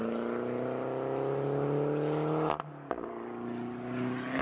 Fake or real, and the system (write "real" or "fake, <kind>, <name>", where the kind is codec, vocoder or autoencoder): real